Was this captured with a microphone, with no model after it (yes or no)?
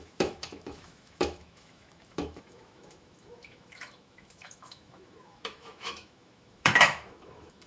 no